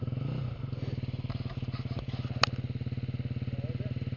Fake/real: real